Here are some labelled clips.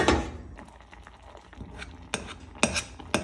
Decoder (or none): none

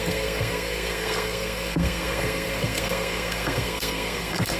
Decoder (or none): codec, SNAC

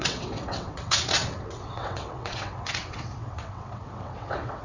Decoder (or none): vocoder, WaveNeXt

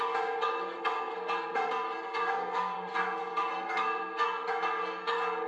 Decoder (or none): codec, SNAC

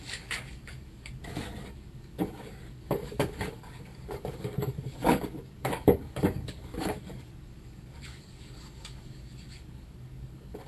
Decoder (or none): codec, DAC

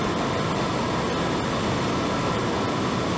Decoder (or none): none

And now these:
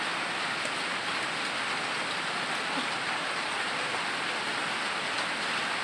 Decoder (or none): none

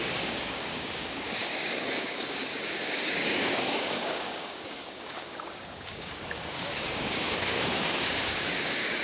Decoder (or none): codec, DAC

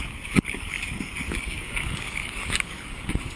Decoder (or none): codec, DAC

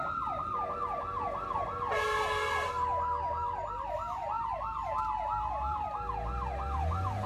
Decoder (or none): none